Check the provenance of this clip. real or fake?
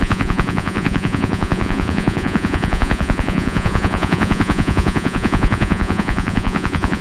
fake